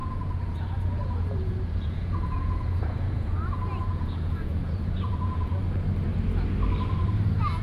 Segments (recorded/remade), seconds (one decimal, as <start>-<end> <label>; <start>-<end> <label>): 0.0-5.5 remade; 5.5-7.6 recorded